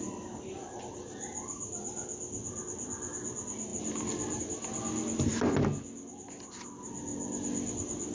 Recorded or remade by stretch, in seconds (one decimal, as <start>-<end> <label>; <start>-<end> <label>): 0.0-8.1 recorded